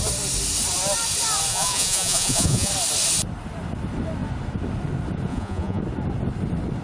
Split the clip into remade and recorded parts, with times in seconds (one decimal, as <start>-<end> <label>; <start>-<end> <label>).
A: 0.0-1.5 recorded; 1.5-2.7 remade; 2.7-5.3 recorded; 5.3-5.8 remade; 5.8-6.8 recorded